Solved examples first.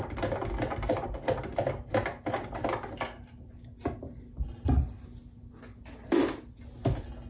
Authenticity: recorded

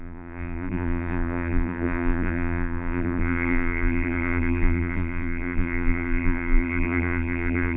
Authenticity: remade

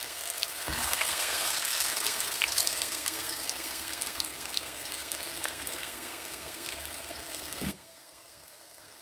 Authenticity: remade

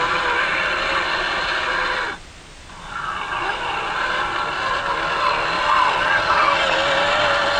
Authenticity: recorded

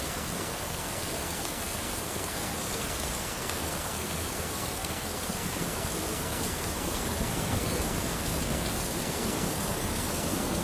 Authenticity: remade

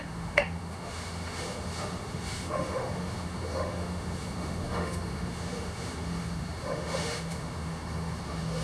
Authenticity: remade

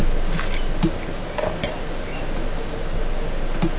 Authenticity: recorded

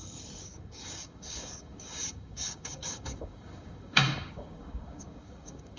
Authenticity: remade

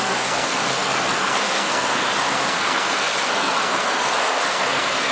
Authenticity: remade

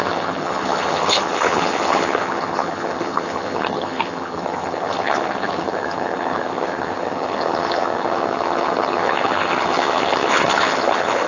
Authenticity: remade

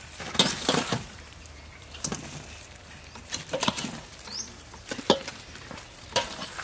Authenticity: remade